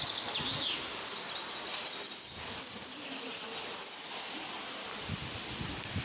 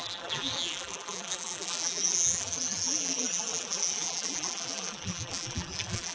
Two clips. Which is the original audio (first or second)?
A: first